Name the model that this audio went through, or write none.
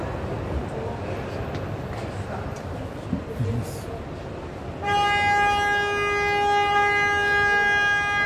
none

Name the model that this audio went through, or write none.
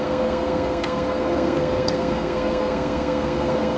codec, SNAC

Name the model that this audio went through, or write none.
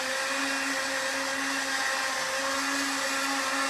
none